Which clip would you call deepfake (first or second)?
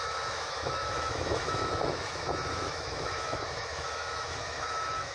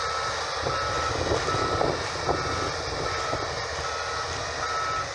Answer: first